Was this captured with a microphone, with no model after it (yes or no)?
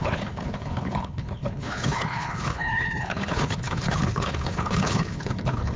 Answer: no